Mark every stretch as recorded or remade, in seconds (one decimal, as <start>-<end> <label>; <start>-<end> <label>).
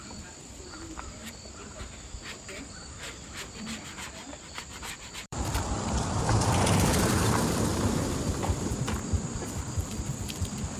0.0-1.2 remade; 1.2-3.3 recorded; 3.3-10.8 remade